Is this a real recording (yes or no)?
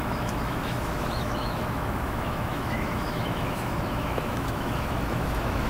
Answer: no